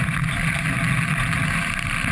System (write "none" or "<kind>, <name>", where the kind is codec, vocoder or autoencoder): none